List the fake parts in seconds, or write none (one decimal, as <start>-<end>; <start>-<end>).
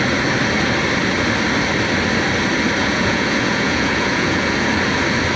2.8-4.7